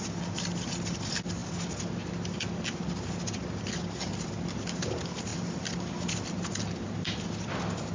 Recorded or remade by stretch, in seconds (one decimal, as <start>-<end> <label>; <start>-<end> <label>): 0.0-5.3 recorded; 5.3-6.3 remade; 6.3-7.9 recorded